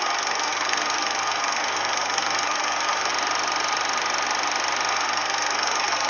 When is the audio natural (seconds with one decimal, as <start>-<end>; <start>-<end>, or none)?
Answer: 3.1-4.9